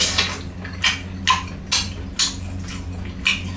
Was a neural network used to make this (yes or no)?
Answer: no